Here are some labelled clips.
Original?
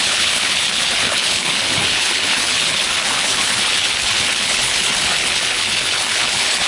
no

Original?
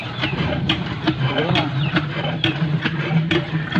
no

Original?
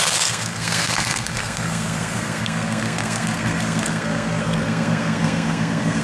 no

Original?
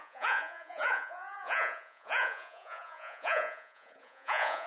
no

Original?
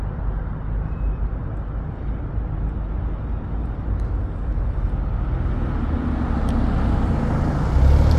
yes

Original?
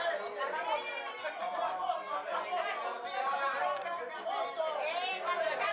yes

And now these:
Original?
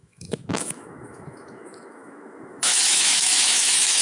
no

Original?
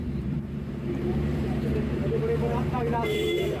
no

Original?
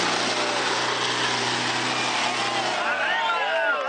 yes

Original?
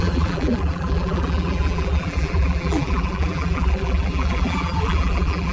no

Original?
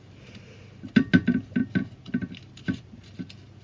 yes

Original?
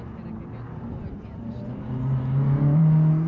yes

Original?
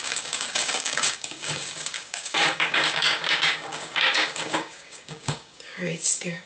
no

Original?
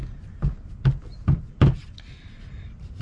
yes